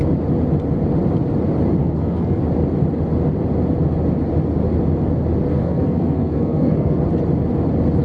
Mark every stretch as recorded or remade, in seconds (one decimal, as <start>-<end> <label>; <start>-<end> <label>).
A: 0.0-1.8 recorded; 1.8-2.4 remade; 2.4-5.5 recorded; 5.5-7.0 remade; 7.0-8.0 recorded